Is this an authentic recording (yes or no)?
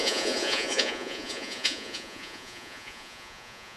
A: no